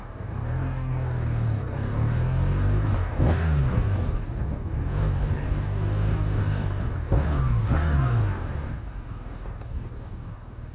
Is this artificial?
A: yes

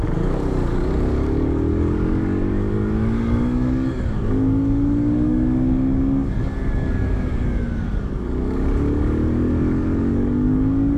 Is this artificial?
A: yes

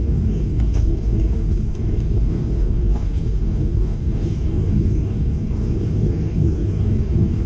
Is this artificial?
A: yes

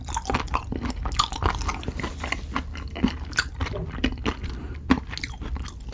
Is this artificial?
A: no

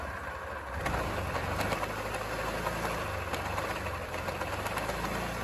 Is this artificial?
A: no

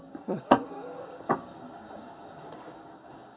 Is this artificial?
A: yes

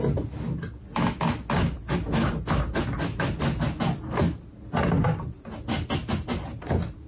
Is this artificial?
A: no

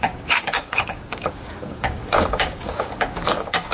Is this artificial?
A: yes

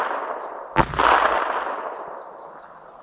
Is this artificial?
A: no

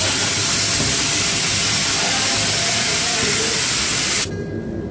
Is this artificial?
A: no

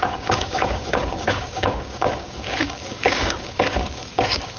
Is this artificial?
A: yes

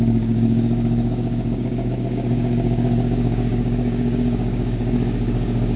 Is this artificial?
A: yes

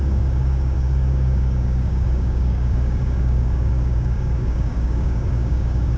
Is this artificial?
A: yes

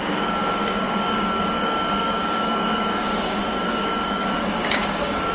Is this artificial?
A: yes